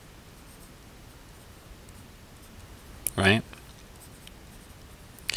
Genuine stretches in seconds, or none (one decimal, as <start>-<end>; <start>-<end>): 0.0-5.4

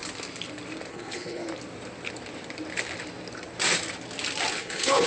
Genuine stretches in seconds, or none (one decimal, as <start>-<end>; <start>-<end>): 0.0-0.9; 1.4-4.5

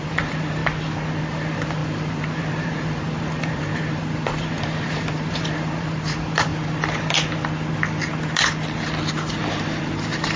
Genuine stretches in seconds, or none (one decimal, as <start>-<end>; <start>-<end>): 0.6-1.2; 6.5-9.3

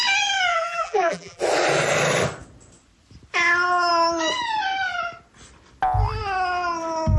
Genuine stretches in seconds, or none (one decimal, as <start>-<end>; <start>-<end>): 0.0-0.5; 1.4-7.2